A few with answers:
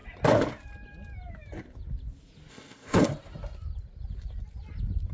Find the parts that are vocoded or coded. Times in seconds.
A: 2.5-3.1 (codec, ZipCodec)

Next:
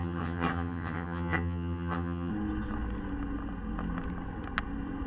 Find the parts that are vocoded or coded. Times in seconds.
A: 0.0-2.3 (vocoder, HiFi-GAN)

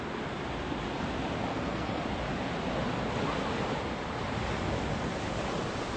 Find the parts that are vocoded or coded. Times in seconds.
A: 1.5-2.0 (codec, SNAC)

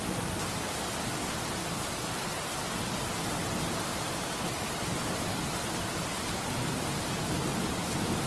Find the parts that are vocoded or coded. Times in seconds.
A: 1.6-2.4 (vocoder, BigVGAN v2); 3.9-5.1

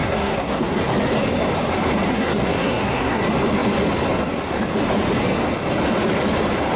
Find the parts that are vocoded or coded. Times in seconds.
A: 0.0-0.8 (codec, SNAC); 2.1-3.2

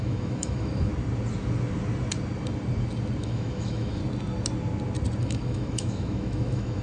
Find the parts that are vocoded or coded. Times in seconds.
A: 0.0-0.9 (autoencoder, DAC-VAE); 3.2-4.0; 5.2-6.8